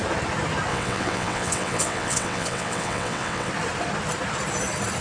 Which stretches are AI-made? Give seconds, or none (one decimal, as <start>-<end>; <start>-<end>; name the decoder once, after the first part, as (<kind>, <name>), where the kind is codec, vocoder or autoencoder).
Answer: 0.7-3.5 (vocoder, WaveNeXt)